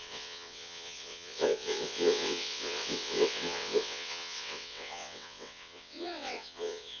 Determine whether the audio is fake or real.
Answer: fake